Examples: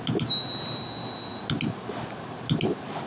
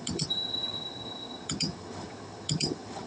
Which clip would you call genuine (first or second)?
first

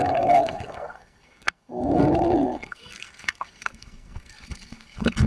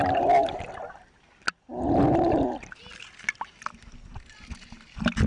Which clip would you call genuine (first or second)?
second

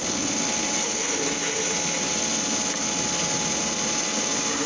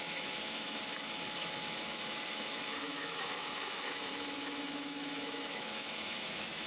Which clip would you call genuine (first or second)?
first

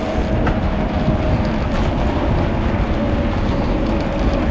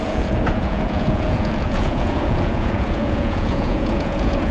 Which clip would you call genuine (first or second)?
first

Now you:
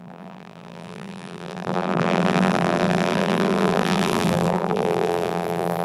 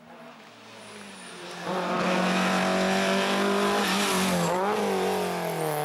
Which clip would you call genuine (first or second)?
second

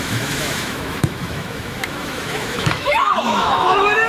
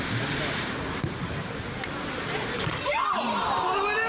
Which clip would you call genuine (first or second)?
second